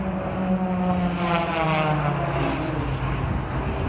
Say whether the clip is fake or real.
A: real